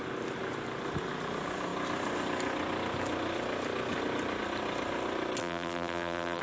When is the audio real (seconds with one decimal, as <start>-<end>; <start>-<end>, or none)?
0.0-5.4

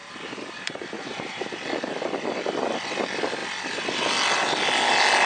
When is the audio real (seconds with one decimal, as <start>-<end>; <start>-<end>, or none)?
1.5-5.3